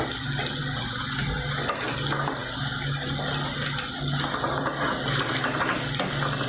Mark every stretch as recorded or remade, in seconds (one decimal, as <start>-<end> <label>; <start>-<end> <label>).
0.0-6.5 recorded